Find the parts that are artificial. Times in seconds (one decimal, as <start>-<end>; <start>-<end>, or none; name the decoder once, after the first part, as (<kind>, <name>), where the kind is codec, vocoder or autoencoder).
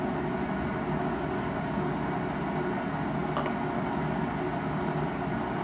none